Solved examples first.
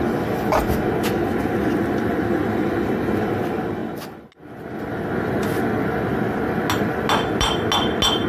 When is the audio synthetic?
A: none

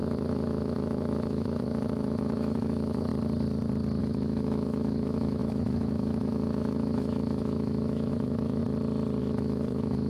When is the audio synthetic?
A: 0.0-3.1 (autoencoder, DAC-VAE); 4.0-8.6; 9.2-10.1